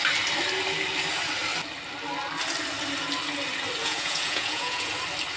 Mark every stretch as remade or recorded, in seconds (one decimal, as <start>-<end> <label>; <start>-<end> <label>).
0.0-3.8 recorded; 3.8-4.9 remade; 4.9-5.4 recorded